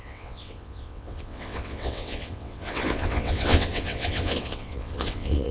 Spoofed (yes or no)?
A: yes